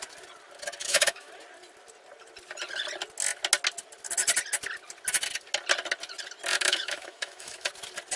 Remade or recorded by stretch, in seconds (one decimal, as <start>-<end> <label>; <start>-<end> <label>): 0.0-0.8 recorded; 0.8-1.3 remade; 1.3-6.5 recorded; 6.5-7.7 remade; 7.7-8.2 recorded